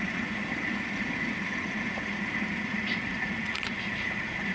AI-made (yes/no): yes